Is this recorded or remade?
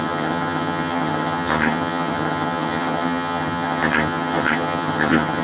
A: remade